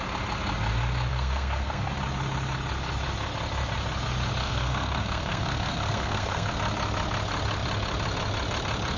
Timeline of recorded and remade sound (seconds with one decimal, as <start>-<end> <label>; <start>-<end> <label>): 0.0-1.1 recorded; 1.1-1.9 remade; 1.9-4.4 recorded; 4.4-6.5 remade; 6.5-9.0 recorded